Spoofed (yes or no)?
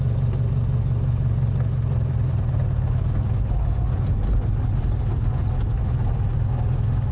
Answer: no